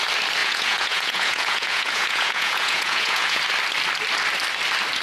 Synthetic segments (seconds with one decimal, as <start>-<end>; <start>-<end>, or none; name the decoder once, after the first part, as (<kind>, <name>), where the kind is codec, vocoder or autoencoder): 0.4-3.4 (vocoder, Vocos)